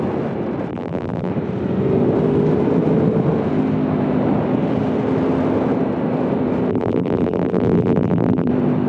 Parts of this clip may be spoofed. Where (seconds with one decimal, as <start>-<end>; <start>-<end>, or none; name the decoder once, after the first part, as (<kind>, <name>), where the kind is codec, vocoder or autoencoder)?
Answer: 0.7-1.3 (vocoder, BigVGAN v2); 6.7-8.5